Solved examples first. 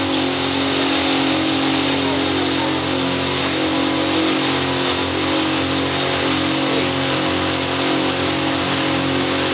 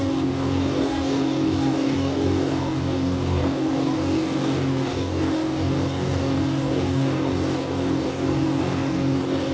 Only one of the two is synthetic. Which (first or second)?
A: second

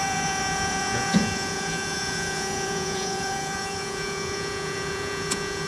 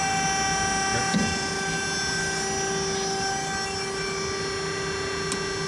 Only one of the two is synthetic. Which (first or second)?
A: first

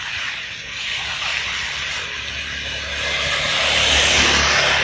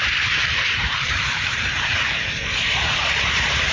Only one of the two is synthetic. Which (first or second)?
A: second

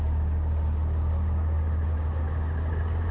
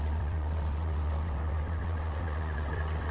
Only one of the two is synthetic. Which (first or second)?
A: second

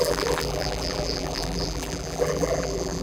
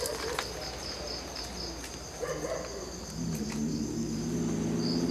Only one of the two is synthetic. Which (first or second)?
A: first